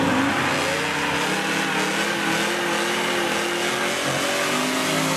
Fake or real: real